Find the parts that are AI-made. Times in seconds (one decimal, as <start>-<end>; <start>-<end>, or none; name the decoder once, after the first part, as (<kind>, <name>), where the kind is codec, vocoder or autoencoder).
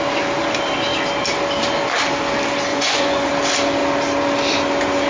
2.7-3.3 (vocoder, Vocos)